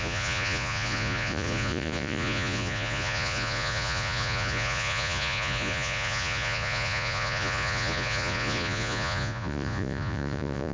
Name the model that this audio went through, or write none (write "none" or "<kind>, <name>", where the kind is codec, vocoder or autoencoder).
vocoder, Vocos